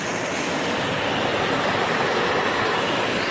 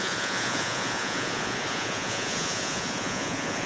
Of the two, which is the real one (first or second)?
first